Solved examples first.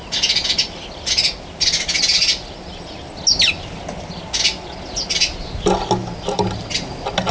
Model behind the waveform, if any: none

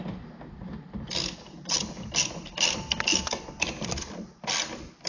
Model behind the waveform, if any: none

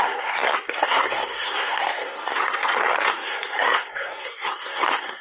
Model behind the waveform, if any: codec, SNAC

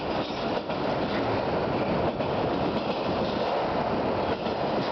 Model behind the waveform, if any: none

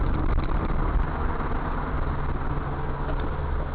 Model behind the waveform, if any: none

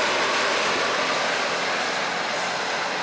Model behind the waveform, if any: none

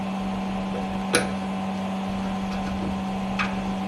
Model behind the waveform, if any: none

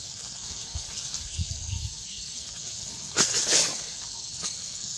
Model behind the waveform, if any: codec, SNAC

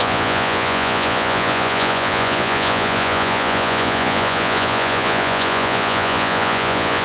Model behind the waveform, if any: vocoder, Vocos